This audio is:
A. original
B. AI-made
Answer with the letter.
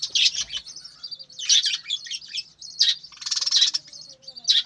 A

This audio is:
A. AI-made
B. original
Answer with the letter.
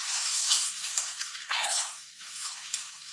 A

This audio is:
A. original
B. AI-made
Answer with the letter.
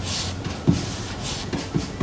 A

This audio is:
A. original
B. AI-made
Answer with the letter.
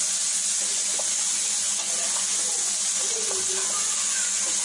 B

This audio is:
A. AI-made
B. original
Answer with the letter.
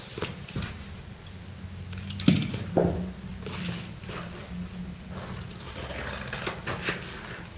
B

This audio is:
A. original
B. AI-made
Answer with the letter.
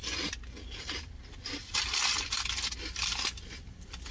A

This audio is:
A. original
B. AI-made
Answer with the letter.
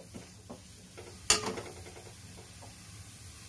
A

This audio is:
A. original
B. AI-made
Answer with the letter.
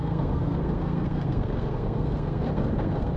B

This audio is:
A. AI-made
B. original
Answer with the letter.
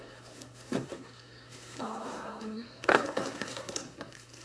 A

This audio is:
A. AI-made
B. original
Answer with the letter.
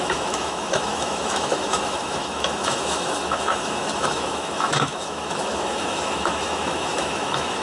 A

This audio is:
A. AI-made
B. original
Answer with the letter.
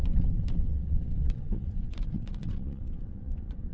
A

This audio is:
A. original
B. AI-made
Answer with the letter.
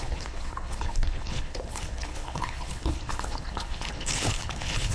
B